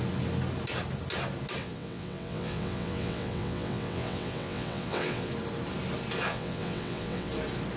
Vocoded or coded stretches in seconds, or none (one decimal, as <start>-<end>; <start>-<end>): 1.6-5.3; 6.3-7.3